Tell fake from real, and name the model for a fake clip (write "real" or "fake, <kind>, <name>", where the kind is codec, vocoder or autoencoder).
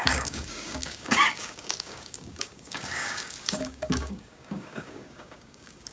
fake, codec, DAC